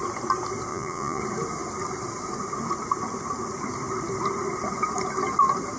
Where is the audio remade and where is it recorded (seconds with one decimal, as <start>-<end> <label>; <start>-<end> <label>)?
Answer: 0.0-0.7 recorded; 0.7-1.2 remade; 1.2-5.8 recorded